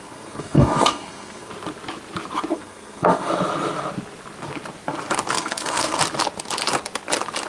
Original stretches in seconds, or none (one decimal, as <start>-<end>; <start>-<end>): 1.5-2.5; 3.3-5.3; 6.0-7.5